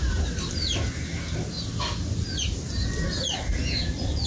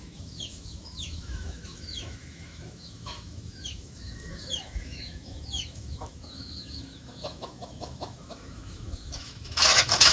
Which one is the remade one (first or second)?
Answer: second